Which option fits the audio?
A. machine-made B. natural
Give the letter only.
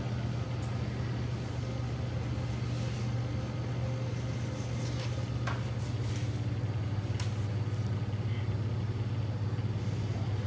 B